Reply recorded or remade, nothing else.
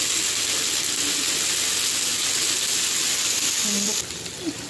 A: recorded